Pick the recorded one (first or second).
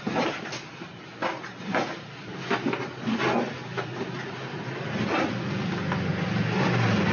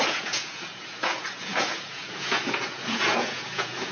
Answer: first